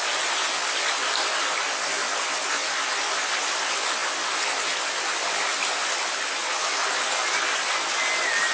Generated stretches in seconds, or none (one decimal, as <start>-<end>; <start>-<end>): none